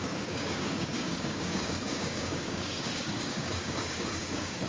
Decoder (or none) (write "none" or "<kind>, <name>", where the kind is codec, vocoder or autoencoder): codec, DAC